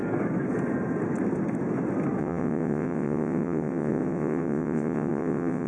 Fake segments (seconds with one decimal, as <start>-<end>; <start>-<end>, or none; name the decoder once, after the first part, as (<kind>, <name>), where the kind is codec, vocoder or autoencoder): 2.2-5.7 (vocoder, WaveNeXt)